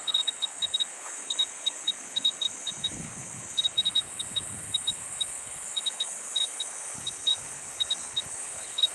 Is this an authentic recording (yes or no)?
no